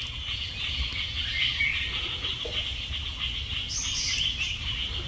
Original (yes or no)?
yes